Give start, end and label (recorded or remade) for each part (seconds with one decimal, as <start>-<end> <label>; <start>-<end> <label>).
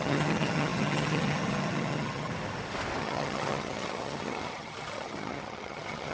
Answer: 0.0-2.3 remade; 2.3-3.0 recorded; 3.0-6.1 remade